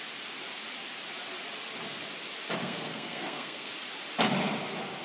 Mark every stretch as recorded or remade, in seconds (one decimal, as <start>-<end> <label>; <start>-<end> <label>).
0.0-2.6 recorded; 2.6-3.7 remade; 3.7-5.0 recorded